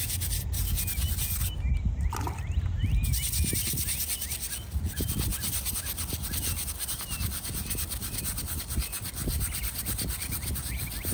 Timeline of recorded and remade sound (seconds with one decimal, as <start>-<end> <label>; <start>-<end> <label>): 0.0-11.1 recorded